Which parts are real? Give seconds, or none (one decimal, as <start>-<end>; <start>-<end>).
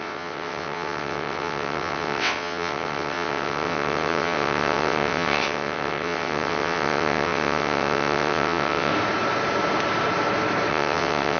8.9-10.7